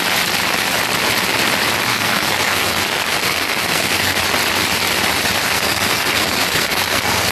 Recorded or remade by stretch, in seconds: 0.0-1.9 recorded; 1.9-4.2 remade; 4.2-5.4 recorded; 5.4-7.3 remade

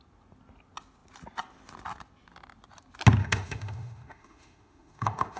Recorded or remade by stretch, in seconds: 0.0-3.2 recorded; 3.2-5.4 remade

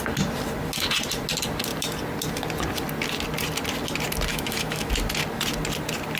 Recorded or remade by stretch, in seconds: 0.0-4.3 recorded; 4.3-4.9 remade; 4.9-6.2 recorded

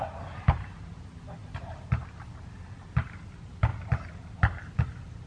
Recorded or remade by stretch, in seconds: 0.0-1.4 recorded; 1.4-2.5 remade; 2.5-5.3 recorded

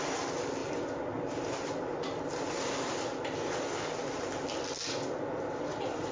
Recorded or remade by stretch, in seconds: 0.0-6.1 recorded

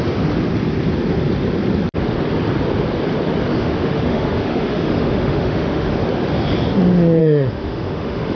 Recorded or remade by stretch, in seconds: 0.0-3.5 recorded; 3.5-5.9 remade; 5.9-7.2 recorded; 7.2-8.4 remade

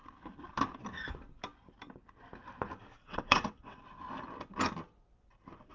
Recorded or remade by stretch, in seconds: 0.0-3.0 recorded; 3.0-3.8 remade; 3.8-5.7 recorded